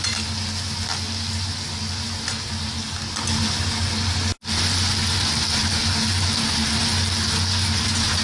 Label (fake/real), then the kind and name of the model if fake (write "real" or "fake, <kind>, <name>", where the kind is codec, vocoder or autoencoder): real